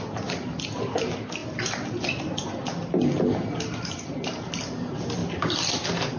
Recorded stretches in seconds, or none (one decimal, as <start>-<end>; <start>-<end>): 0.0-6.2